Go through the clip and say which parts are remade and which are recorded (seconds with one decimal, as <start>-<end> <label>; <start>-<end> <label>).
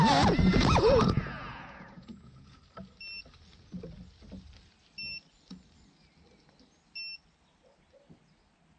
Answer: 0.0-0.5 recorded; 0.5-2.6 remade; 2.6-8.8 recorded